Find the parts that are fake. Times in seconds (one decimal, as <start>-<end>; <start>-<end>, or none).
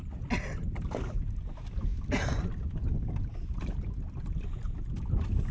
none